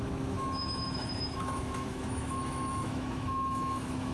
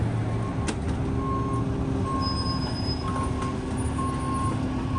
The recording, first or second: second